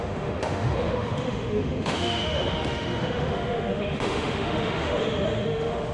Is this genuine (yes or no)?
no